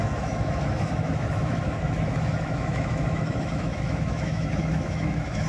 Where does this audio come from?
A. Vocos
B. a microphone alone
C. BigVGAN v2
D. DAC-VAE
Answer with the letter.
D